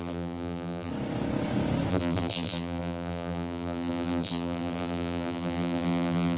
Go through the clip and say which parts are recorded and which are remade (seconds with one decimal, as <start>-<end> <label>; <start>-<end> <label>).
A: 0.0-0.9 remade; 0.9-1.9 recorded; 1.9-6.4 remade